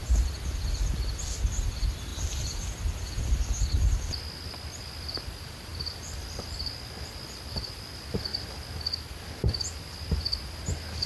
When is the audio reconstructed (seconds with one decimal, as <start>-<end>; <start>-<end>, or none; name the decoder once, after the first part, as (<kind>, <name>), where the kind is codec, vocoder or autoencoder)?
5.7-7.9 (vocoder, BigVGAN v2)